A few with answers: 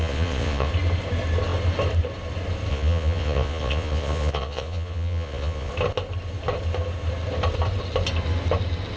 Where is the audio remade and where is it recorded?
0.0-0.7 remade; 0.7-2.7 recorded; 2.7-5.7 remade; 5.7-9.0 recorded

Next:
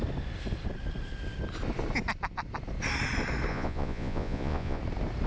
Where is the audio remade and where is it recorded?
0.0-3.5 recorded; 3.5-4.8 remade; 4.8-5.3 recorded

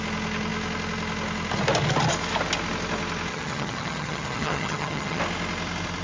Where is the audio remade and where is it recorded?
0.0-3.3 recorded; 3.3-5.2 remade; 5.2-6.0 recorded

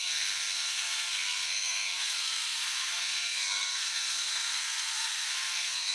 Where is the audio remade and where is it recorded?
0.0-5.9 remade

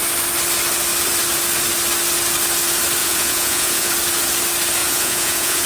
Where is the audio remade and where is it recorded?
0.0-3.0 recorded; 3.0-3.9 remade; 3.9-4.8 recorded; 4.8-5.7 remade

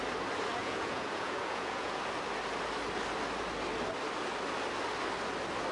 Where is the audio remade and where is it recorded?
0.0-0.6 recorded; 0.6-2.0 remade; 2.0-5.7 recorded

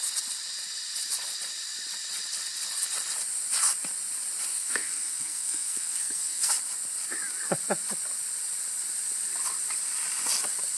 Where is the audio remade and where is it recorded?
0.0-4.5 recorded; 4.5-6.5 remade; 6.5-10.8 recorded

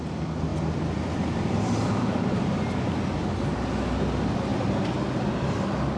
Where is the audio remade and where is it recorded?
0.0-0.5 recorded; 0.5-3.3 remade; 3.3-6.0 recorded